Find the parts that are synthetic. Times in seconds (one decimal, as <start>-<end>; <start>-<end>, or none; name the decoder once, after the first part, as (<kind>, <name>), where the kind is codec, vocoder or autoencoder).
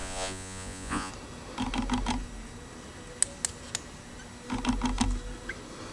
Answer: 0.0-1.1 (vocoder, Vocos)